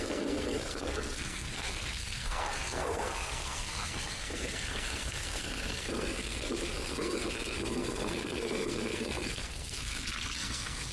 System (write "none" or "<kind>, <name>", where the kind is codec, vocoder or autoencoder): codec, SNAC